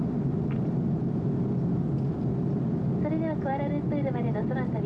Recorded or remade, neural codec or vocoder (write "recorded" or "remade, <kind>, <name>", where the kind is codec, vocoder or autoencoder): recorded